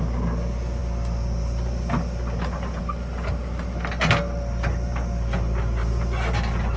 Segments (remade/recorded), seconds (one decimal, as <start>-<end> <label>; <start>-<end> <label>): 0.0-6.8 recorded

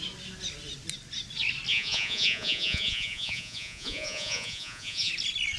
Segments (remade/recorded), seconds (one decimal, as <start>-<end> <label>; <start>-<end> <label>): 0.0-1.7 recorded; 1.7-5.1 remade; 5.1-5.6 recorded

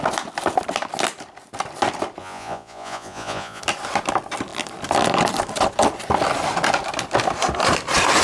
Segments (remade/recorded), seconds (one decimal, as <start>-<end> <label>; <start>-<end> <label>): 0.0-2.2 recorded; 2.2-3.6 remade; 3.6-8.2 recorded

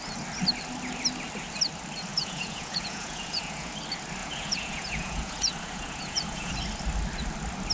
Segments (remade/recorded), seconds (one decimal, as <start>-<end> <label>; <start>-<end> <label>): 0.0-2.1 recorded; 2.1-3.7 remade; 3.7-4.2 recorded; 4.2-6.5 remade; 6.5-7.7 recorded

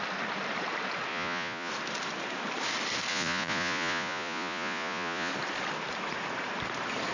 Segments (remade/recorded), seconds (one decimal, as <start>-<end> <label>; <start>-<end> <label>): 0.0-1.1 recorded; 1.1-1.7 remade; 1.7-3.1 recorded; 3.1-5.3 remade; 5.3-7.1 recorded

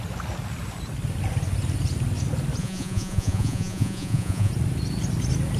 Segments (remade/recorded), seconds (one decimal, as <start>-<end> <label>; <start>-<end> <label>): 0.0-2.6 recorded; 2.6-4.5 remade; 4.5-5.6 recorded

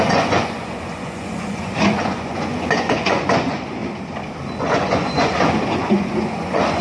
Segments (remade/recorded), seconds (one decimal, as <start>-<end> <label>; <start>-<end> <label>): 0.0-3.8 remade; 3.8-4.6 recorded; 4.6-5.3 remade; 5.3-5.8 recorded; 5.8-6.8 remade